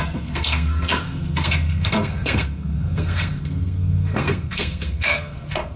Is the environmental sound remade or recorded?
remade